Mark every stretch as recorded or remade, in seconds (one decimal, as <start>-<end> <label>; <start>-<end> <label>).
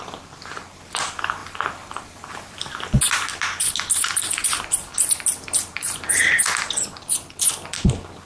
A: 0.0-1.4 recorded; 1.4-2.6 remade; 2.6-5.7 recorded; 5.7-6.4 remade; 6.4-8.3 recorded